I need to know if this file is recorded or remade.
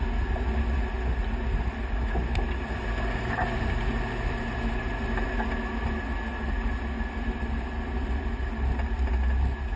recorded